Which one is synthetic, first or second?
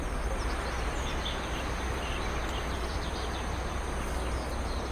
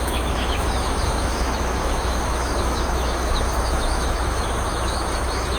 second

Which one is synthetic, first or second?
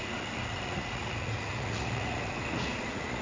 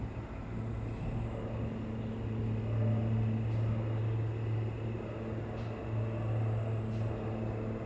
first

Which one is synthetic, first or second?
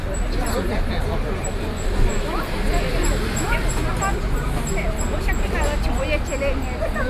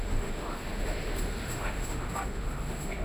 second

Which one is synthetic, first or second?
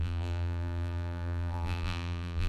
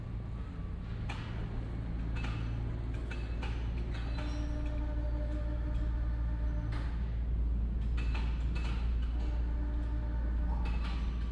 first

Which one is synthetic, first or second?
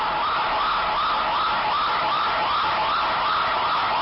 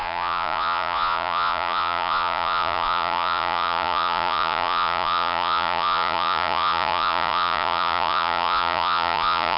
second